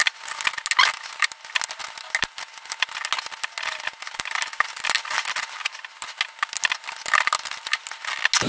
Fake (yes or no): no